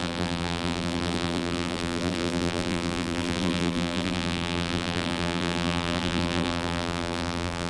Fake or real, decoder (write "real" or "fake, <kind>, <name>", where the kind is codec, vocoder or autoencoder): fake, vocoder, BigVGAN v2